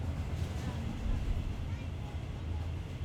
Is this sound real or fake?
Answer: real